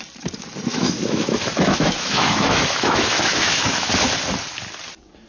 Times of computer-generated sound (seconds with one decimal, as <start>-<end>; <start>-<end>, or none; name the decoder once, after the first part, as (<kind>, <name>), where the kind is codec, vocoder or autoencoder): 0.7-3.9 (autoencoder, DAC-VAE)